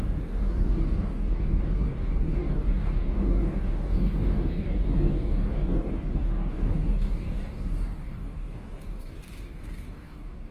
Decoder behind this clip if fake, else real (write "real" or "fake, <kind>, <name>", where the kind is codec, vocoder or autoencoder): fake, codec, DAC